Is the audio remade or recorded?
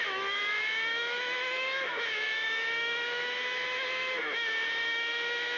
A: remade